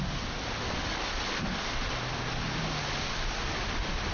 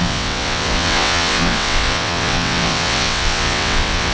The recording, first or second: first